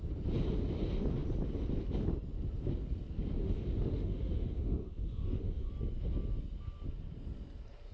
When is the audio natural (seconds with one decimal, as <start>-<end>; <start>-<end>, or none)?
0.0-3.4; 5.7-7.9